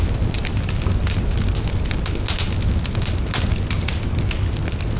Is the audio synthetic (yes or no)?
no